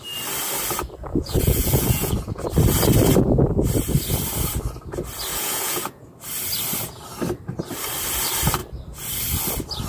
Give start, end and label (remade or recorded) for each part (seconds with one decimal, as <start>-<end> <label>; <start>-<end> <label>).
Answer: 0.0-1.1 recorded; 1.1-2.1 remade; 2.1-5.3 recorded; 5.3-6.1 remade; 6.1-9.9 recorded